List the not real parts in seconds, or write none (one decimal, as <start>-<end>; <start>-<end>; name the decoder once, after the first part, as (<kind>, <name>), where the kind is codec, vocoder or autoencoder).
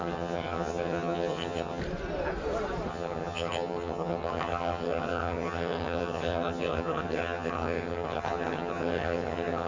0.0-1.8 (vocoder, HiFi-GAN); 2.9-9.7